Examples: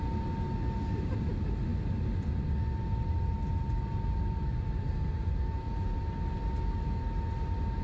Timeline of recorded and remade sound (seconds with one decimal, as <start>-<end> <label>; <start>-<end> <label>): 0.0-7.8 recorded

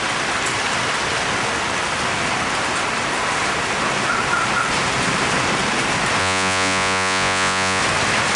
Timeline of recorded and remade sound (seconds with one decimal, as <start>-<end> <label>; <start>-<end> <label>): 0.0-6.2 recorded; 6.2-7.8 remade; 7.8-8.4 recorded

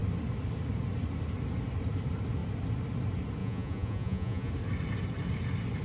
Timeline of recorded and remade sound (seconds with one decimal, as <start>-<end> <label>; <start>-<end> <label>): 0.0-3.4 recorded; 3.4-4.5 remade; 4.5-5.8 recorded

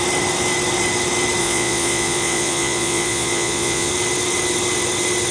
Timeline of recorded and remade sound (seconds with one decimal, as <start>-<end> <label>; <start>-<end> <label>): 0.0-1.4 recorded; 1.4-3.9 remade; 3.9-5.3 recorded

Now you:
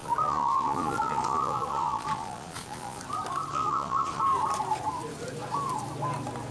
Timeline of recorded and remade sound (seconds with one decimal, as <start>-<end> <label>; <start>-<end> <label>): 0.0-3.0 remade; 3.0-3.5 recorded; 3.5-4.2 remade; 4.2-6.5 recorded

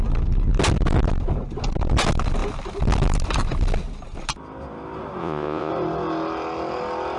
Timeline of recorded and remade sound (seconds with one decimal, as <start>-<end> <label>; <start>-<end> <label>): 0.0-5.2 recorded; 5.2-5.7 remade; 5.7-7.2 recorded

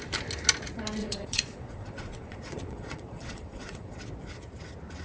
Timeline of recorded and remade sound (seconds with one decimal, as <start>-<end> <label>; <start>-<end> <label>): 0.0-1.0 recorded; 1.0-4.0 remade; 4.0-5.0 recorded

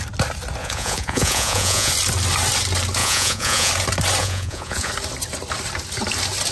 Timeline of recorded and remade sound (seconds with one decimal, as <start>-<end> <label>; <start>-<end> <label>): 0.0-0.6 recorded; 0.6-1.9 remade; 1.9-3.0 recorded; 3.0-3.7 remade; 3.7-4.2 recorded; 4.2-4.9 remade; 4.9-6.5 recorded